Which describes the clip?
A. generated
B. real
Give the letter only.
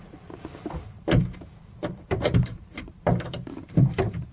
A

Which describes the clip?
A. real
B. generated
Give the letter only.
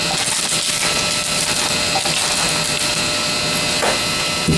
A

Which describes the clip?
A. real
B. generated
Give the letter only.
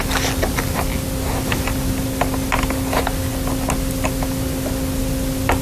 A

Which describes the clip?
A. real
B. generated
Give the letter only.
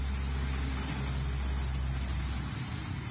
A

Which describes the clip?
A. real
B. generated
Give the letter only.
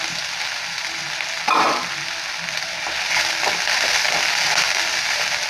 A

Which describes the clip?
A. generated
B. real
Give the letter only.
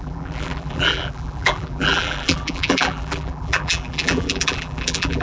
A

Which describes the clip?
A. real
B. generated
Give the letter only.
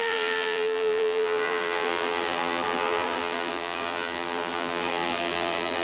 B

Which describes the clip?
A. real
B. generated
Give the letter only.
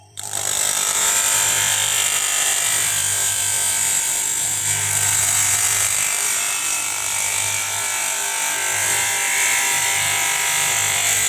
B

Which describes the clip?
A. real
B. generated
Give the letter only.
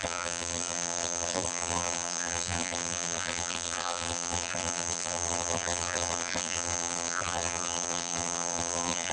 B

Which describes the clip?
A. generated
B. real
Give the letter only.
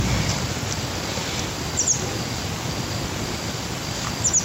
B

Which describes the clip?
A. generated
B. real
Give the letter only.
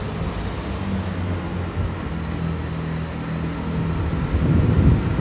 B